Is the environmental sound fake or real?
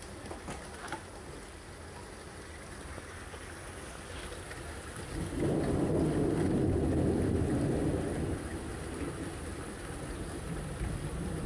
real